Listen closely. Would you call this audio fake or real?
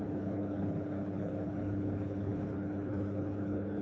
fake